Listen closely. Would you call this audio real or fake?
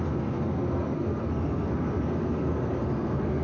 fake